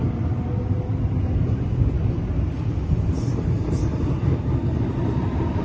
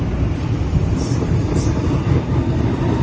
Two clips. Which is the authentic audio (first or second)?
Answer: first